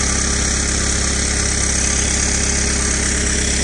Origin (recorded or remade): recorded